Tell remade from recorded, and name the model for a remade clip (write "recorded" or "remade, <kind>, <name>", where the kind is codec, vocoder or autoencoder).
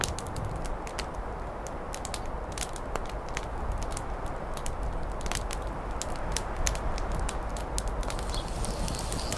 recorded